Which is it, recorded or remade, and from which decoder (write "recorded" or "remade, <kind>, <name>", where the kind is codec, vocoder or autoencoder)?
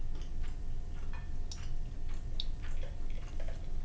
recorded